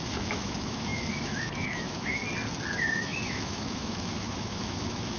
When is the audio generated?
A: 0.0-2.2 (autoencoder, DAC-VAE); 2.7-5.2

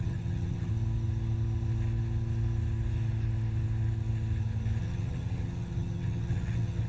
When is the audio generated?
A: 0.0-0.7 (vocoder, HiFi-GAN); 4.8-6.9

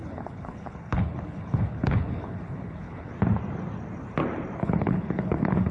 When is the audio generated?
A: 0.0-3.1 (codec, HILCodec); 4.6-5.7

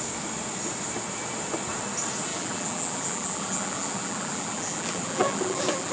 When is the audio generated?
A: 2.3-5.9 (vocoder, BigVGAN v2)

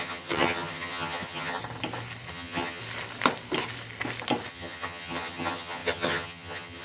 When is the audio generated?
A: 0.0-1.6 (vocoder, HiFi-GAN); 2.3-2.8; 4.5-6.8

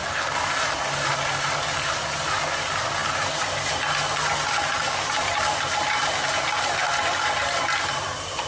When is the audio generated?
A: none